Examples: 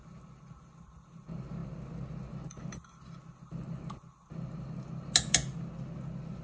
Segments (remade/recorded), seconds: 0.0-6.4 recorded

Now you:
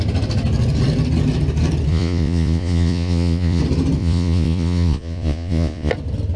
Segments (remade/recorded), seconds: 0.0-1.9 recorded; 1.9-3.6 remade; 3.6-4.0 recorded; 4.0-5.9 remade; 5.9-6.4 recorded

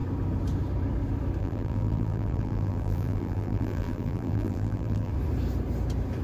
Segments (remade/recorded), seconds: 0.0-1.4 recorded; 1.4-5.1 remade; 5.1-6.2 recorded

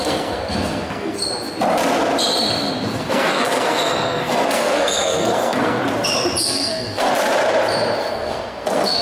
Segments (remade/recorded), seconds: 0.0-1.2 remade; 1.2-2.9 recorded; 2.9-5.8 remade; 5.8-6.4 recorded; 6.4-7.1 remade; 7.1-8.0 recorded; 8.0-9.0 remade

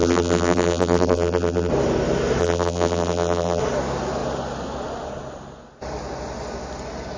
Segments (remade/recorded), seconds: 0.0-1.7 remade; 1.7-2.4 recorded; 2.4-3.6 remade; 3.6-7.2 recorded

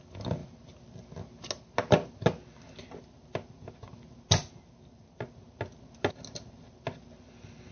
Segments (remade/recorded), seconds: 0.0-7.7 recorded

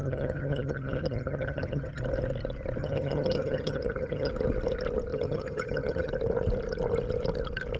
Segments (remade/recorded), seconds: 0.0-2.0 remade; 2.0-2.8 recorded; 2.8-4.3 remade; 4.3-5.1 recorded; 5.1-6.1 remade; 6.1-7.8 recorded

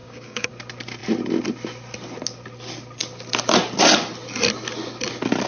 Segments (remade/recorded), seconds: 0.0-0.5 remade; 0.5-5.5 recorded